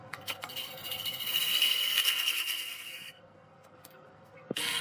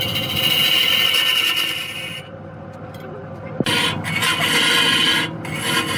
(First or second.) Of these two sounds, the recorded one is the second